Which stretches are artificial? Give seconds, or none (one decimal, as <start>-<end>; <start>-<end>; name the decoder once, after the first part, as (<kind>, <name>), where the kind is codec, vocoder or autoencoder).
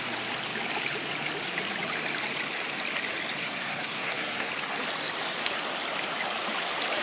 3.4-4.5 (codec, SNAC)